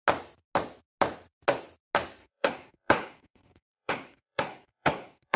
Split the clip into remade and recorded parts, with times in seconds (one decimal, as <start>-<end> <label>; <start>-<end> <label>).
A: 0.0-2.2 recorded; 2.2-5.4 remade